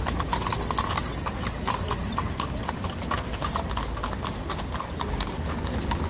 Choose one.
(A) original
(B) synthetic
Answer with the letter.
A